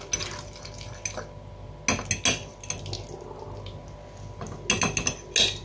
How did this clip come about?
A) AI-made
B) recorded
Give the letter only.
B